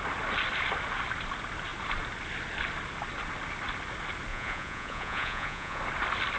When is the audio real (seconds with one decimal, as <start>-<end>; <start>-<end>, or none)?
0.0-4.3; 5.8-6.4